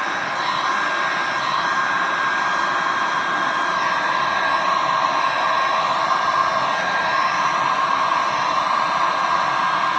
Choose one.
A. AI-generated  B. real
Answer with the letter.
B